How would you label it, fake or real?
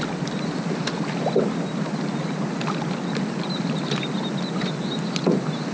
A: real